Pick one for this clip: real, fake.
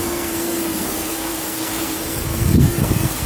fake